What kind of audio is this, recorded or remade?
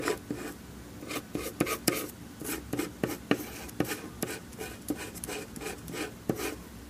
recorded